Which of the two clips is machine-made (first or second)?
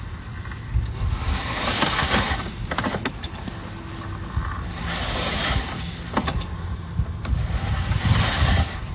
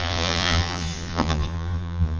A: second